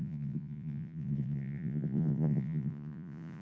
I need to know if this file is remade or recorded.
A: remade